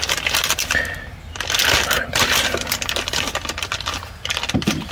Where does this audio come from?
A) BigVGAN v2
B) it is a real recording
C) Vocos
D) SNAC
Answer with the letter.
B